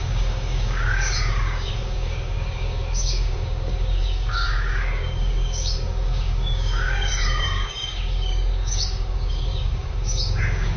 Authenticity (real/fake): fake